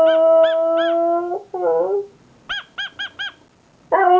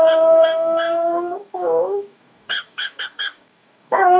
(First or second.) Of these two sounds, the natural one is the first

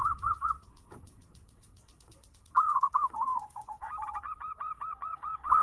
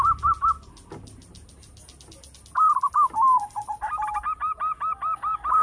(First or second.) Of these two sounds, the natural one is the second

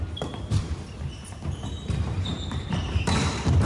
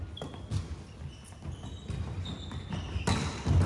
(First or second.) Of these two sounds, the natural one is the second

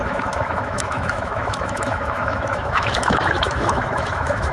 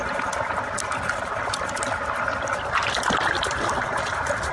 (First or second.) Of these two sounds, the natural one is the second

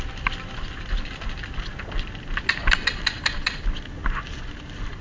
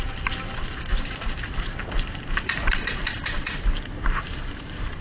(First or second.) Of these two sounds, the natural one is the first